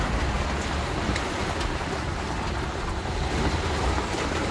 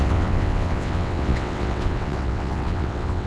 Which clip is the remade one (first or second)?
second